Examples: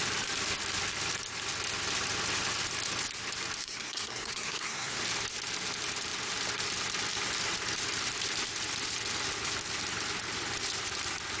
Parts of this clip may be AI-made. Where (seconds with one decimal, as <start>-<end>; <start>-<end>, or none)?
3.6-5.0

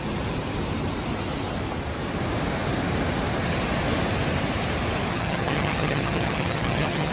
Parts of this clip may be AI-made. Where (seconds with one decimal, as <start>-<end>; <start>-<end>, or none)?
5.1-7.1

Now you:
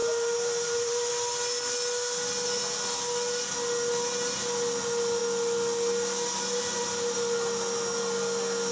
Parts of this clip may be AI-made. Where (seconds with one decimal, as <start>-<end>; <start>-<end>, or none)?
0.0-1.1

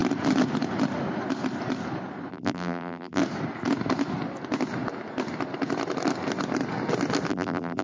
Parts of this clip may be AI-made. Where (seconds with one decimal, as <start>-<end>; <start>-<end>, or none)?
2.3-3.2; 7.3-7.8

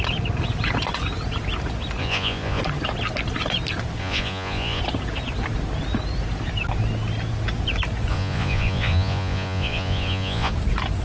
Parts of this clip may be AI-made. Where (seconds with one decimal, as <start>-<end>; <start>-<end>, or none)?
2.0-2.6; 4.0-4.8; 8.1-10.5

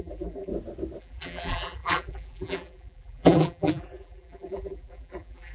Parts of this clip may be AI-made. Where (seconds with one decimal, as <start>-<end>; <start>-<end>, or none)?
0.0-0.5; 1.0-5.5

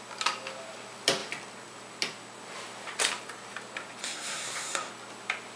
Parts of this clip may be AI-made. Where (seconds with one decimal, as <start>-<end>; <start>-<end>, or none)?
4.0-4.9

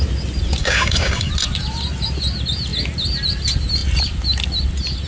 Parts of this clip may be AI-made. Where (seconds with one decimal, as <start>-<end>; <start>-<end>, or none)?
0.6-1.3